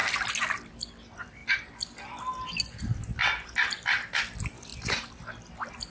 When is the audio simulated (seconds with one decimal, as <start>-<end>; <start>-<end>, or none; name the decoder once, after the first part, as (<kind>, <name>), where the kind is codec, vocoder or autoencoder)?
0.7-4.7 (vocoder, BigVGAN v2)